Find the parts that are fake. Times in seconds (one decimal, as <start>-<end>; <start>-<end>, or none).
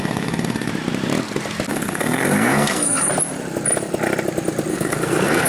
0.0-0.7; 1.7-3.1; 4.7-5.5